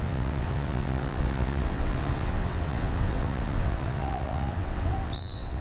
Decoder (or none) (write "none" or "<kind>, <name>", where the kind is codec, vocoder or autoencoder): vocoder, WaveNeXt